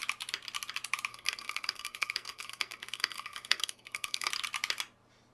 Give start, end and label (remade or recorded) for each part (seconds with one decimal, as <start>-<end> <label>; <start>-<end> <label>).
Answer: 0.0-1.1 recorded; 1.1-4.3 remade; 4.3-5.3 recorded